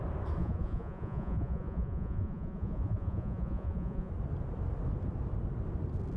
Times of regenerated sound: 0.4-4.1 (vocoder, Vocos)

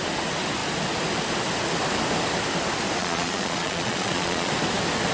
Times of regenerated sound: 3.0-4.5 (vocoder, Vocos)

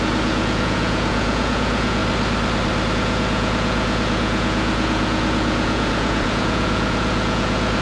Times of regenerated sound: 0.0-2.0 (vocoder, Vocos); 2.9-7.8

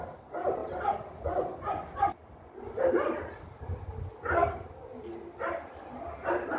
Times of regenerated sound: none

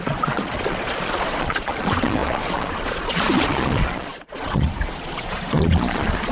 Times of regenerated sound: 0.0-6.3 (vocoder, Vocos)

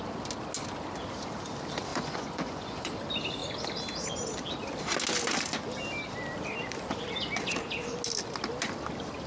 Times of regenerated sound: 1.9-2.9 (vocoder, Vocos)

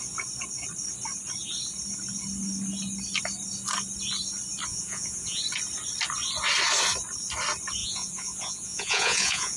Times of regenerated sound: 4.7-5.4 (vocoder, Vocos); 7.8-9.6